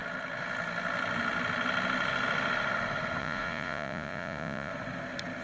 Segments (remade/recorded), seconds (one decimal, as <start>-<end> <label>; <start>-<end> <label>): 0.0-3.2 recorded; 3.2-4.7 remade; 4.7-5.4 recorded